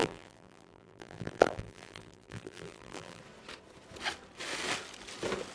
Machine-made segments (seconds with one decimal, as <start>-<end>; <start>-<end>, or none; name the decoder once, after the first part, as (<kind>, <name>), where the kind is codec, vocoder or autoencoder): 0.0-3.2 (vocoder, BigVGAN v2)

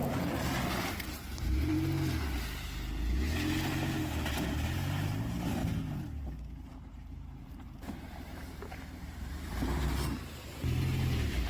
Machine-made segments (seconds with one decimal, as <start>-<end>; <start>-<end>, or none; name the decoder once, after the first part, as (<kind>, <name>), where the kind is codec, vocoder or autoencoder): 1.0-1.7 (vocoder, BigVGAN v2); 4.0-5.6; 6.3-11.5

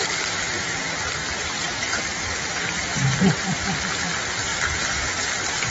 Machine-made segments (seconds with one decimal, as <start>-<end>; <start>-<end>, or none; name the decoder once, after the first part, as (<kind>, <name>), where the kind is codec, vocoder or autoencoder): 1.2-3.8 (vocoder, BigVGAN v2)

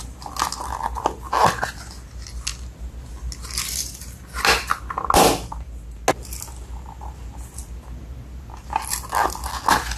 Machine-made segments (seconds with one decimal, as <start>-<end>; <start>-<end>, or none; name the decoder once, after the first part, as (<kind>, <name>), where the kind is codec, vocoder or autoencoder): none